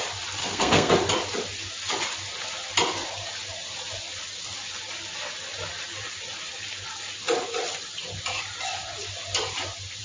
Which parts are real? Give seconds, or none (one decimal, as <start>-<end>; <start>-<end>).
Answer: 0.0-0.4; 0.9-10.0